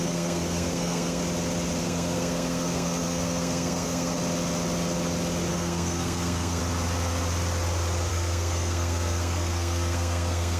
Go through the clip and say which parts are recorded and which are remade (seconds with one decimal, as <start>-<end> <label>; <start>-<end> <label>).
0.0-1.2 remade; 1.2-1.8 recorded; 1.8-4.2 remade; 4.2-5.5 recorded; 5.5-6.6 remade; 6.6-8.1 recorded; 8.1-10.6 remade